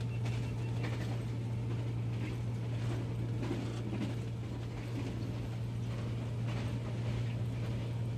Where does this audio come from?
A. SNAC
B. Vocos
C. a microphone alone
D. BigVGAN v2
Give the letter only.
C